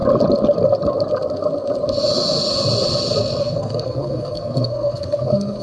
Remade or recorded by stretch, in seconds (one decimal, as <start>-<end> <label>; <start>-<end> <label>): 0.0-3.4 recorded; 3.4-5.6 remade